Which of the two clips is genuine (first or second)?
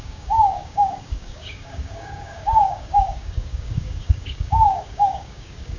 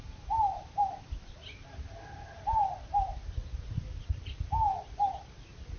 second